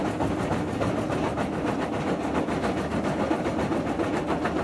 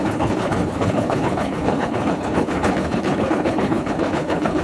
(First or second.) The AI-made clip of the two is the second